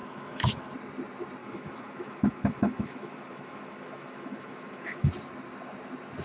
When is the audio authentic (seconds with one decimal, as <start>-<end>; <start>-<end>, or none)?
0.6-1.4; 5.1-6.2